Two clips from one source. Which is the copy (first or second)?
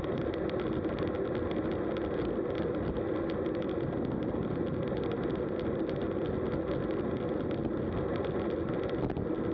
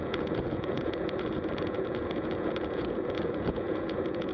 second